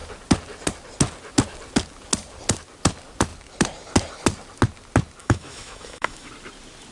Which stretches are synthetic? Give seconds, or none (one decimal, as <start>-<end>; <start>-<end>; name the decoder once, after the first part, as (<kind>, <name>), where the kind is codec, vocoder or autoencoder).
5.2-6.3 (autoencoder, DAC-VAE)